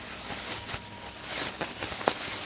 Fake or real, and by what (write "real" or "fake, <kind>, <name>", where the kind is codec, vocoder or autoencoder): real